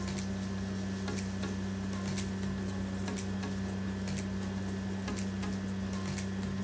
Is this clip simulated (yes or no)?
no